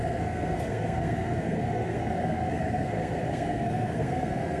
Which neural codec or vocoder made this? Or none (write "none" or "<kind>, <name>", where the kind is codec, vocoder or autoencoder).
codec, SNAC